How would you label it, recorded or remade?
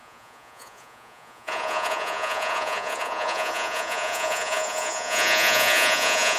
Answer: remade